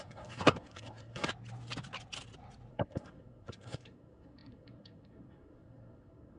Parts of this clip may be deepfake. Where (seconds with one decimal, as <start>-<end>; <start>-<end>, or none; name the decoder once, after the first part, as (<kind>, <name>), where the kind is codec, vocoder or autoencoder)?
0.0-1.3 (codec, SNAC); 2.7-6.4